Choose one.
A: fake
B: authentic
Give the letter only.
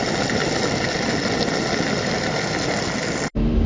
B